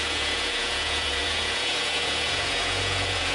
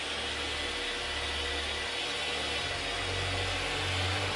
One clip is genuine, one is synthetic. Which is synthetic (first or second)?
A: first